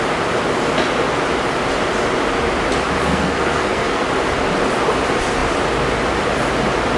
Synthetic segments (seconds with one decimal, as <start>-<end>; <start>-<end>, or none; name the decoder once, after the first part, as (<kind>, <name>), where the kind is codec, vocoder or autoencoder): 3.0-4.0 (codec, SNAC)